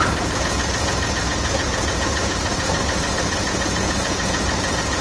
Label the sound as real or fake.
fake